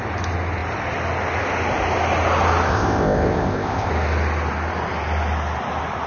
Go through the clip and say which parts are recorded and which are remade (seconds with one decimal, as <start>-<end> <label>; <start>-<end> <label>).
0.0-2.7 recorded; 2.7-3.9 remade; 3.9-6.1 recorded